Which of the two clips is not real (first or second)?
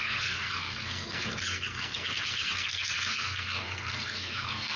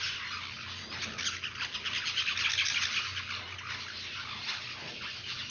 first